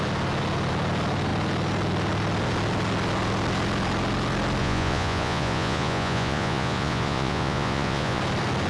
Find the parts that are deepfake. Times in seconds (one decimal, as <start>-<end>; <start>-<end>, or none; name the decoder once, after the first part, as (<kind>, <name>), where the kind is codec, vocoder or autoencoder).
4.6-8.2 (vocoder, Vocos)